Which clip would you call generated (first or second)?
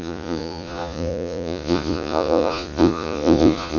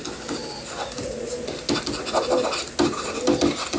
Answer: first